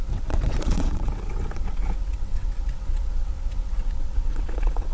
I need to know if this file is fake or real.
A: fake